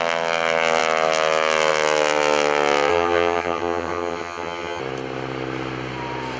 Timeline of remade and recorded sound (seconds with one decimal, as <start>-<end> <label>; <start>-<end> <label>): 0.0-2.9 recorded; 2.9-4.8 remade; 4.8-6.4 recorded